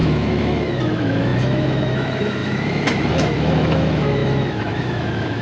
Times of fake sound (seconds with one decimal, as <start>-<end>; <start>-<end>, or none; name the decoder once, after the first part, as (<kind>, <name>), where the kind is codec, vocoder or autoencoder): 0.0-5.4 (autoencoder, DAC-VAE)